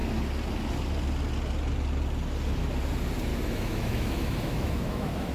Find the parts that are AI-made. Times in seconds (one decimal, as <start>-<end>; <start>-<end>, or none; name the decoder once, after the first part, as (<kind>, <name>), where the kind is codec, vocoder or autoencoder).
3.3-5.3 (autoencoder, DAC-VAE)